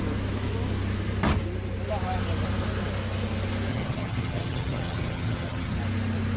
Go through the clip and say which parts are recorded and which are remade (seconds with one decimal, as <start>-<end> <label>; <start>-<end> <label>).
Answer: 0.0-3.7 recorded; 3.7-5.8 remade; 5.8-6.4 recorded